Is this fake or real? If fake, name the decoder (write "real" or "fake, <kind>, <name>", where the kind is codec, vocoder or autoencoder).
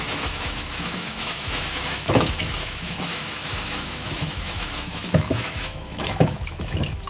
fake, autoencoder, DAC-VAE